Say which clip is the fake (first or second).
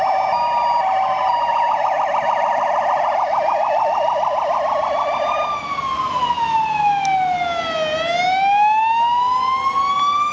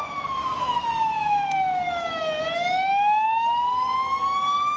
second